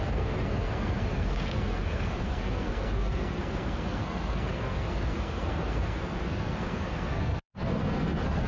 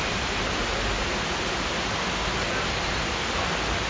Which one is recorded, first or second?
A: second